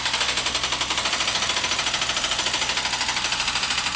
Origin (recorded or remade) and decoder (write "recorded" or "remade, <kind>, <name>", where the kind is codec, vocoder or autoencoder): recorded